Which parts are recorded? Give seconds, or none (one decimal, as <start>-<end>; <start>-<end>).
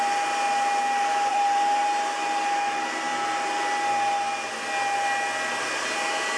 0.0-1.3; 1.8-6.4